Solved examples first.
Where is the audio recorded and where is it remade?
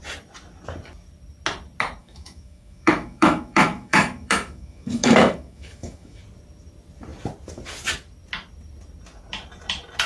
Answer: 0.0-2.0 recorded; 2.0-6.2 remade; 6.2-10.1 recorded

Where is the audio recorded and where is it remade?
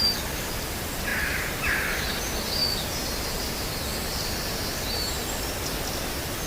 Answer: 0.0-1.1 recorded; 1.1-2.0 remade; 2.0-2.6 recorded; 2.6-5.5 remade; 5.5-6.5 recorded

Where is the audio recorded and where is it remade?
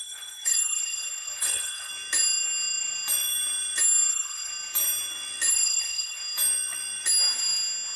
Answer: 0.0-1.9 remade; 1.9-4.1 recorded; 4.1-4.5 remade; 4.5-5.5 recorded; 5.5-6.2 remade; 6.2-8.0 recorded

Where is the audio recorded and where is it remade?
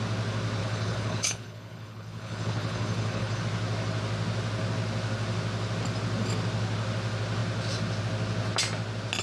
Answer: 0.0-0.6 recorded; 0.6-3.4 remade; 3.4-9.2 recorded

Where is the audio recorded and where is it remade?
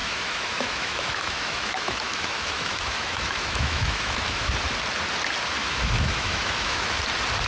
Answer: 0.0-4.5 remade; 4.5-5.6 recorded; 5.6-6.9 remade; 6.9-7.5 recorded